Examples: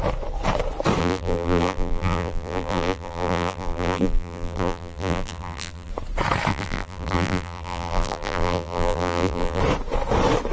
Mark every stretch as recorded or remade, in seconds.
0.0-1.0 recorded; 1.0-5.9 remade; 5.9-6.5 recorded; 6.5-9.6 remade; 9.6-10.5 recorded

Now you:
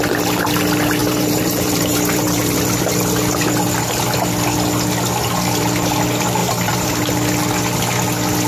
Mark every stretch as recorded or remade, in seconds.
0.0-1.0 recorded; 1.0-2.4 remade; 2.4-6.4 recorded; 6.4-7.1 remade; 7.1-8.5 recorded

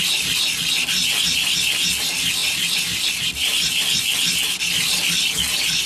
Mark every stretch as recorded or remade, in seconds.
0.0-2.4 recorded; 2.4-5.9 remade

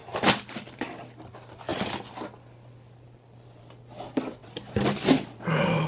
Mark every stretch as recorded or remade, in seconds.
0.0-1.1 remade; 1.1-4.4 recorded; 4.4-5.4 remade; 5.4-5.9 recorded